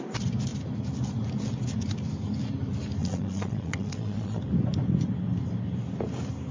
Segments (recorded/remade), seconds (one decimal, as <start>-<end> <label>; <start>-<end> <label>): 0.0-3.0 recorded; 3.0-4.4 remade; 4.4-6.5 recorded